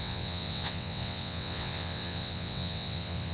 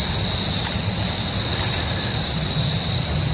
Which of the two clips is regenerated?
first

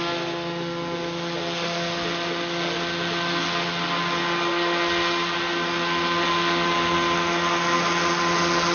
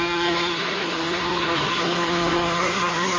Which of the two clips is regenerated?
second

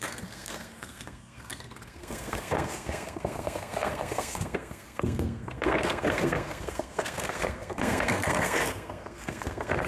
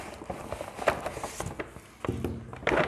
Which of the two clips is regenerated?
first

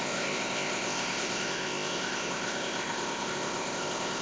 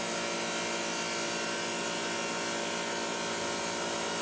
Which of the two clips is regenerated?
first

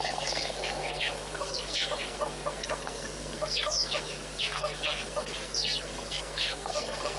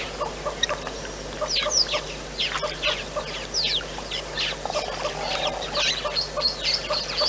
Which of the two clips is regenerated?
first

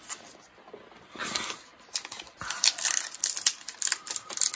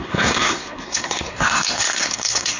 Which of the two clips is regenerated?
second